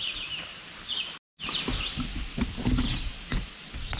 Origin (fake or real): real